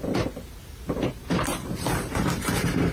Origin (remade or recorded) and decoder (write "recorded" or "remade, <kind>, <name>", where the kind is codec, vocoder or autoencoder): remade, vocoder, BigVGAN v2